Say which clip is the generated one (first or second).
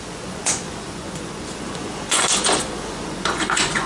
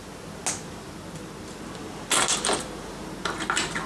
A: first